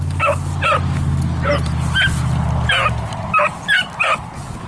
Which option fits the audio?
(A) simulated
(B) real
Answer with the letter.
B